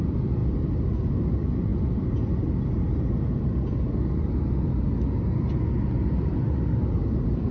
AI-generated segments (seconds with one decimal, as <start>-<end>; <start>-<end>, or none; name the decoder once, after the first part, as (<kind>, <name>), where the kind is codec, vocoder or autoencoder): none